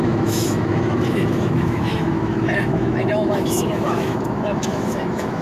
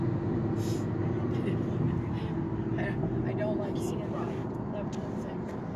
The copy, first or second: first